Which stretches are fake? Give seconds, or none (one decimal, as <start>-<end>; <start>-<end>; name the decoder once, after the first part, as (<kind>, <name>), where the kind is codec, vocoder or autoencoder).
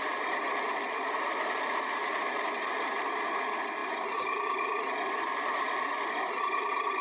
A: 0.0-2.0 (vocoder, BigVGAN v2); 2.6-7.0